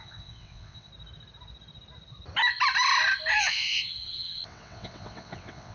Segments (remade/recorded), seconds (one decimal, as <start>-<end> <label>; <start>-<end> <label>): 0.0-0.9 remade; 0.9-3.4 recorded; 3.4-5.7 remade